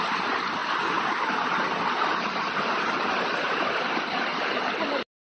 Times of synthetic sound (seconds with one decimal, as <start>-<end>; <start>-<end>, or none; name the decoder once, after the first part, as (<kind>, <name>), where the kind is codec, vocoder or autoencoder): none

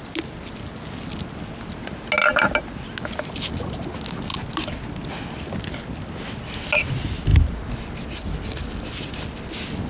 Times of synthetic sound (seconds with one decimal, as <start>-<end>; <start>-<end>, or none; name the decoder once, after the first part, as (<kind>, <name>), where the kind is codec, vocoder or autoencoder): none

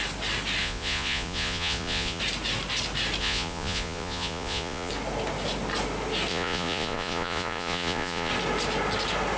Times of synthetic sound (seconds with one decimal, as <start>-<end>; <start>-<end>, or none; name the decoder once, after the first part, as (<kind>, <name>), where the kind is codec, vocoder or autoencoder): 0.6-2.2 (vocoder, Vocos); 3.2-4.9; 6.3-8.3